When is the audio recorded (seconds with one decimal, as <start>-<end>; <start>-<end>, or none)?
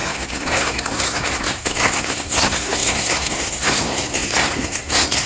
none